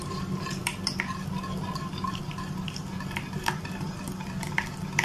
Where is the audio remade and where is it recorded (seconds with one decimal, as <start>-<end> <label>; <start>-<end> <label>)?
0.0-5.0 recorded